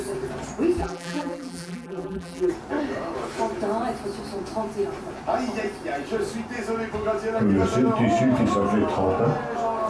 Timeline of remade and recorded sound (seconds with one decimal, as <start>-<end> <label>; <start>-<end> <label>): 0.0-0.8 recorded; 0.8-2.5 remade; 2.5-9.9 recorded